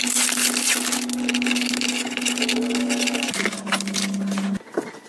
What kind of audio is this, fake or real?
real